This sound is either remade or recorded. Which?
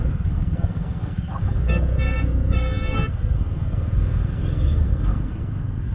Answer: remade